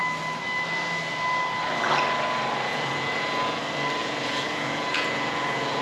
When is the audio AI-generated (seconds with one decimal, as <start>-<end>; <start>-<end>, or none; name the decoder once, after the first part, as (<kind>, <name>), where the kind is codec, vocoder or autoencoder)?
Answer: 2.7-3.6 (vocoder, Vocos); 4.0-5.8